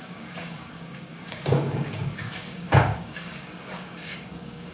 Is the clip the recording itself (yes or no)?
no